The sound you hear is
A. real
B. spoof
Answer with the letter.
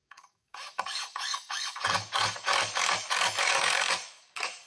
B